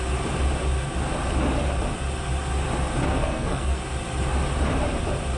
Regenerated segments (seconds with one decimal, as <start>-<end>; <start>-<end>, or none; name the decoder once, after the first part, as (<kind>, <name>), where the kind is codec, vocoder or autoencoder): 3.1-3.8 (codec, SNAC)